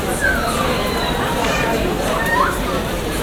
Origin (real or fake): fake